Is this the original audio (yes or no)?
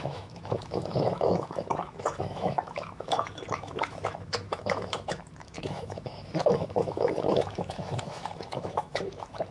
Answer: no